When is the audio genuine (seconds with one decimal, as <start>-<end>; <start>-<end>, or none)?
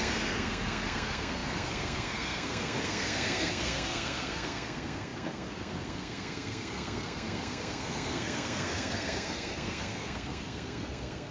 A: none